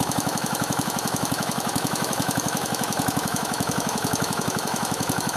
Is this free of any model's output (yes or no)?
no